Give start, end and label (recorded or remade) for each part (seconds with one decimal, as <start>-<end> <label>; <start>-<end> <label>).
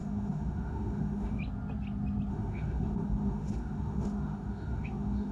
0.0-1.4 remade; 1.4-2.3 recorded; 2.3-5.3 remade